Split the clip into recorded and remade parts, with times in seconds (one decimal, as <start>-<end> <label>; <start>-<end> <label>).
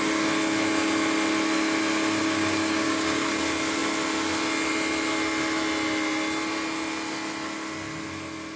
0.0-2.2 recorded; 2.2-3.3 remade; 3.3-8.6 recorded